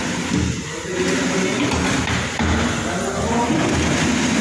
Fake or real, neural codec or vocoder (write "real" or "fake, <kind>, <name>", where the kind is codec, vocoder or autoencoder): real